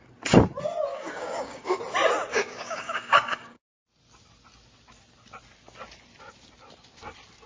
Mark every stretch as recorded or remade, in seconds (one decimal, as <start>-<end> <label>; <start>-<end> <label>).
0.0-0.9 recorded; 0.9-1.8 remade; 1.8-2.3 recorded; 2.3-3.6 remade; 3.6-7.5 recorded